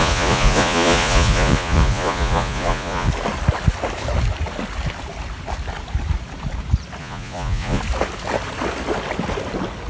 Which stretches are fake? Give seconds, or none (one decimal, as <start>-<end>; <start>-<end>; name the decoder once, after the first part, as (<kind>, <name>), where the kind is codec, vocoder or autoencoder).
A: 0.0-3.1 (vocoder, Vocos); 7.0-7.8